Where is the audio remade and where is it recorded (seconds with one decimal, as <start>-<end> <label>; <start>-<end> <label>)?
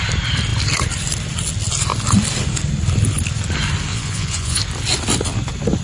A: 0.0-3.9 recorded; 3.9-4.6 remade; 4.6-5.8 recorded